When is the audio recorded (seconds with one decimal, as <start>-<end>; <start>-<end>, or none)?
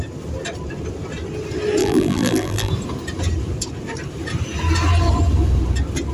0.0-1.8; 2.7-6.1